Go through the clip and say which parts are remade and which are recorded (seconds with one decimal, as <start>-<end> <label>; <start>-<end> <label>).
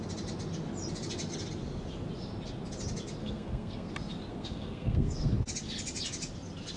0.0-3.2 recorded; 3.2-3.9 remade; 3.9-4.3 recorded; 4.3-5.3 remade; 5.3-6.8 recorded